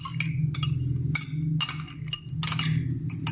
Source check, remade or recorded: recorded